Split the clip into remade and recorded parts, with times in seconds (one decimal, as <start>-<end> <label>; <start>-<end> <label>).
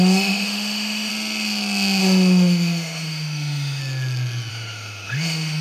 0.0-1.1 remade; 1.1-2.0 recorded; 2.0-3.8 remade; 3.8-4.5 recorded; 4.5-5.6 remade